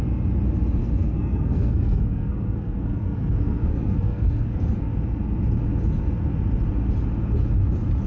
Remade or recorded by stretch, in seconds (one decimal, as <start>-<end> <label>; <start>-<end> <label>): 0.0-0.8 recorded; 0.8-4.9 remade; 4.9-8.1 recorded